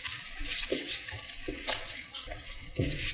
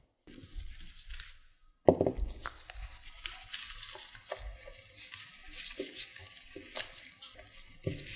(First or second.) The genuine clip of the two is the second